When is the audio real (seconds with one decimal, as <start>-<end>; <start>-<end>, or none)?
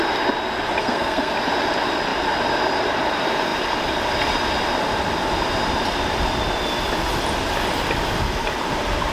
0.0-0.8; 1.3-9.1